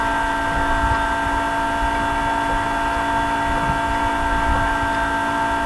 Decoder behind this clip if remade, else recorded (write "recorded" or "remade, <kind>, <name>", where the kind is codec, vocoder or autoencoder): recorded